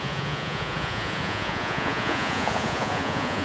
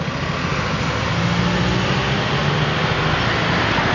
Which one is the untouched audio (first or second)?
second